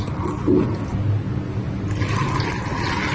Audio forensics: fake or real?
real